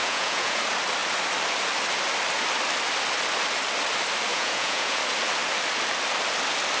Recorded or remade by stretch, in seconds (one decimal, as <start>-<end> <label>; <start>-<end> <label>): 0.0-0.6 remade; 0.6-4.3 recorded; 4.3-5.0 remade; 5.0-6.8 recorded